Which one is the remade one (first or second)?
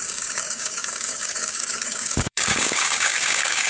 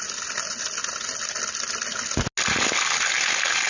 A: first